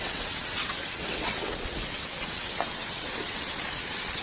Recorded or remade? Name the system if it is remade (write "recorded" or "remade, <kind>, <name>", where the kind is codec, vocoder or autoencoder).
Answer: remade, vocoder, WaveNeXt